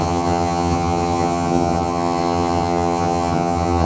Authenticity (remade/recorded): remade